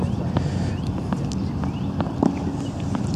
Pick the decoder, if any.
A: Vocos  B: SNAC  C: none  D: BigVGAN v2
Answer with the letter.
C